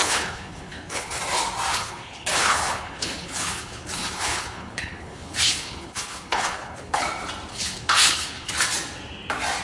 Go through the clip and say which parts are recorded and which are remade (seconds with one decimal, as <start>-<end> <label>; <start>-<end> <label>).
0.0-1.2 remade; 1.2-1.7 recorded; 1.7-7.0 remade; 7.0-7.5 recorded; 7.5-8.5 remade; 8.5-9.6 recorded